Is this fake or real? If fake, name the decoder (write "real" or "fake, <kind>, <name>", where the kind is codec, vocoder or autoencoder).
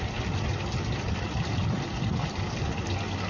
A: real